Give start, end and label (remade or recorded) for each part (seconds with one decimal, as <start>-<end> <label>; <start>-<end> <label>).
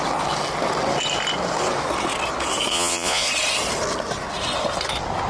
0.0-2.7 recorded; 2.7-3.3 remade; 3.3-5.3 recorded